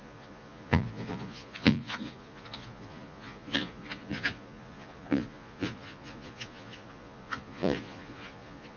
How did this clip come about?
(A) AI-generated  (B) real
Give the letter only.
A